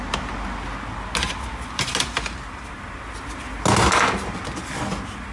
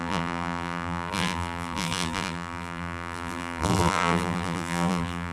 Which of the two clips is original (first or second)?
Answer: first